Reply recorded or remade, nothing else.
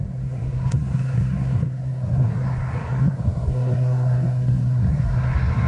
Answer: remade